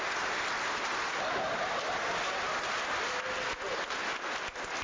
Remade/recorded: recorded